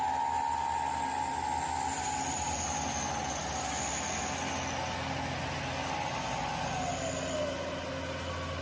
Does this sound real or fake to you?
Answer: real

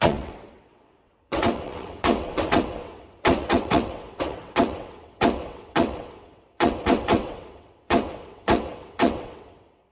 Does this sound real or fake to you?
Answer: fake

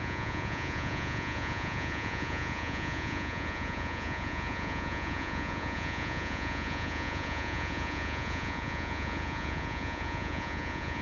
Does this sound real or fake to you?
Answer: fake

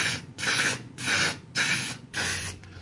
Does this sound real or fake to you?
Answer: fake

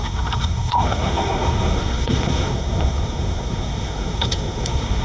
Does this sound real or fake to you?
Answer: fake